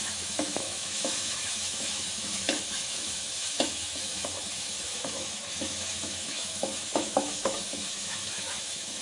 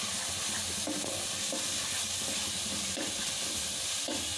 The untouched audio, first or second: second